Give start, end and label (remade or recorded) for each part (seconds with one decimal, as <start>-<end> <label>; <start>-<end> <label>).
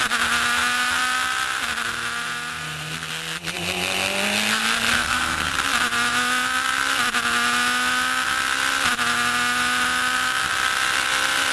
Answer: 0.0-4.9 recorded; 4.9-5.5 remade; 5.5-11.5 recorded